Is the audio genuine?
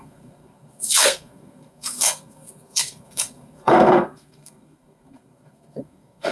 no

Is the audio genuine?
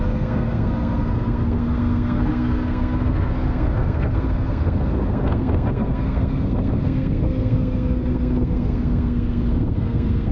no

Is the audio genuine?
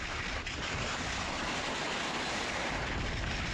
yes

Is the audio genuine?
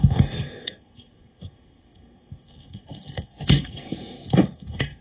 no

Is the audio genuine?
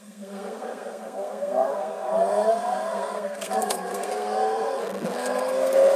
no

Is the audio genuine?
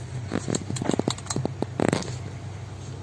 yes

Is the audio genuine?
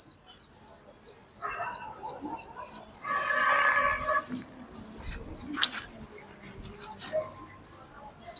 yes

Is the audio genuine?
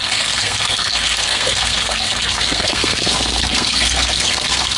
no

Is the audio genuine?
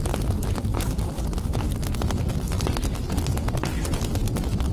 yes